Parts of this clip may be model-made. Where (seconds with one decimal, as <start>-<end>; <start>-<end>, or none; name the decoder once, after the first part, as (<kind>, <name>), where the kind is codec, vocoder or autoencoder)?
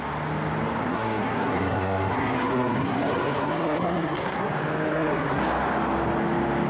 0.8-4.5 (codec, SNAC); 4.9-5.4